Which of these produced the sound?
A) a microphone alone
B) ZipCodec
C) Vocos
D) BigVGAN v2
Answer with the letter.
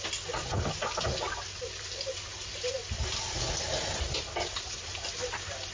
A